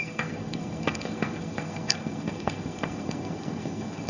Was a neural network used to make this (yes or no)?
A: yes